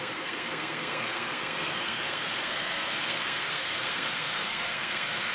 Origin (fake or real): fake